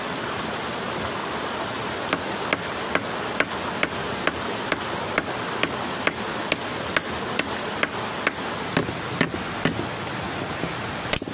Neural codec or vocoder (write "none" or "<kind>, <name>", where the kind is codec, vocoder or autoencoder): none